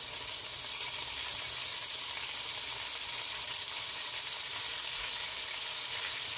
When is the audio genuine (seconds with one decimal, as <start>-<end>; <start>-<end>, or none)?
0.0-6.4